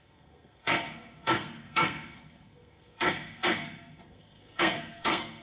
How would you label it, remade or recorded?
remade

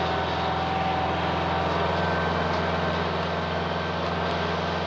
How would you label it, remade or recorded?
recorded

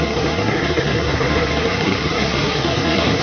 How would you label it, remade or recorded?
remade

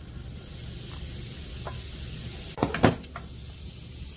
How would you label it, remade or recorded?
recorded